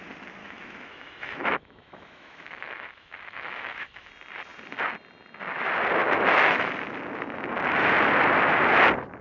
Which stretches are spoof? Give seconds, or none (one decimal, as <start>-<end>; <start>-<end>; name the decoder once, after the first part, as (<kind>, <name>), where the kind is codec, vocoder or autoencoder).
0.4-4.1 (autoencoder, DAC-VAE); 6.0-6.7